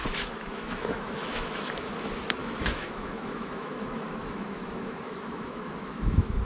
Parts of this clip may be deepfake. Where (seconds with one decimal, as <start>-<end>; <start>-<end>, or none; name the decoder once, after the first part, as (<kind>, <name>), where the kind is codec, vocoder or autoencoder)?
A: 0.0-1.9 (autoencoder, DAC-VAE); 2.4-6.4

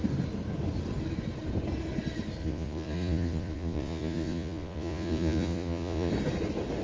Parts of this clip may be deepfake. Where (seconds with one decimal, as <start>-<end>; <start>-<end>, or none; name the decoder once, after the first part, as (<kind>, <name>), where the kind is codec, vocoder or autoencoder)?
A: 2.4-6.1 (vocoder, Vocos)

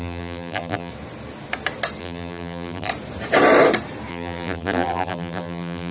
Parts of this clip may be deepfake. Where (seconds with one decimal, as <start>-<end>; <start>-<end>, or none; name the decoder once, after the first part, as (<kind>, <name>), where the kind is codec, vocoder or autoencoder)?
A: 0.0-0.9 (vocoder, BigVGAN v2); 2.0-2.9; 4.1-5.9

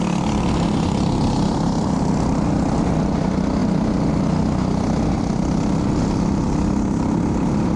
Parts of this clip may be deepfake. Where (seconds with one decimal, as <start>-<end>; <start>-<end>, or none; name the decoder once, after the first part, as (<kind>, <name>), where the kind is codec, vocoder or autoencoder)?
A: none

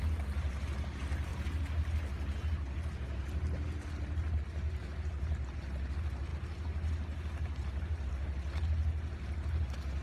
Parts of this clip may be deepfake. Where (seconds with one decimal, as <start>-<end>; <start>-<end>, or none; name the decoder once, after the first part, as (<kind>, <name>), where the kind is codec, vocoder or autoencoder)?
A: none

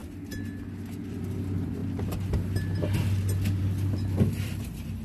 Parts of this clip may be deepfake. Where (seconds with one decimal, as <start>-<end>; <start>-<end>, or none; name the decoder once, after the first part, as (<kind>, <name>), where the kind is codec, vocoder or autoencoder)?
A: 1.0-1.8 (vocoder, BigVGAN v2); 3.6-5.0

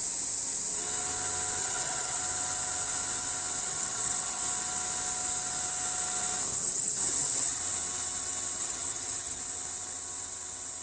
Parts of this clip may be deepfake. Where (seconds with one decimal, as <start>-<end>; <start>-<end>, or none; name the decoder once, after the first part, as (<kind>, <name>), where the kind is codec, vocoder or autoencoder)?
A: 1.6-2.2 (vocoder, HiFi-GAN); 3.6-4.4; 6.5-7.6; 8.6-9.4

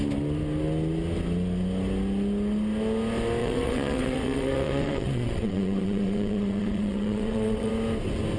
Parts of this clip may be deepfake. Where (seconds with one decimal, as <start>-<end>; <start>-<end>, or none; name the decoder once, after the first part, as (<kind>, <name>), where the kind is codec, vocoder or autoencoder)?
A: 3.4-7.7 (vocoder, WaveNeXt)